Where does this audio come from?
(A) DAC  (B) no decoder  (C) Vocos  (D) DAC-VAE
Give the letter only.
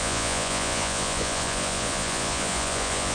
C